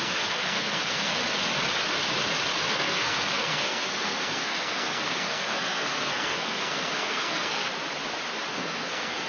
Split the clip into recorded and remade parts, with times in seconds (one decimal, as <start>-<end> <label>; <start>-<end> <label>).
0.0-1.2 remade; 1.2-2.7 recorded; 2.7-7.7 remade; 7.7-8.5 recorded; 8.5-9.3 remade